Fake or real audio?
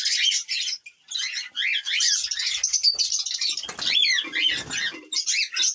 real